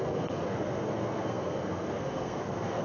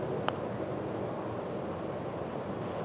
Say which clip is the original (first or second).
second